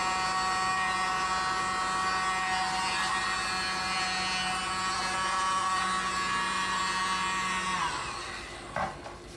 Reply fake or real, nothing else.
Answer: real